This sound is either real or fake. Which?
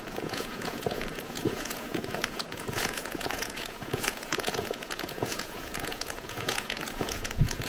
fake